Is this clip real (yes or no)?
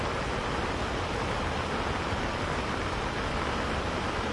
yes